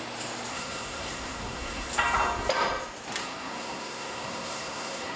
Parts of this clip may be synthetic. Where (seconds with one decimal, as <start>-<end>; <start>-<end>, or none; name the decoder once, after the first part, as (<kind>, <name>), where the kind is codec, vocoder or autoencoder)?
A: 0.5-1.9 (codec, SNAC); 3.2-5.2